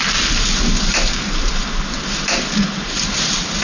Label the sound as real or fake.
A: real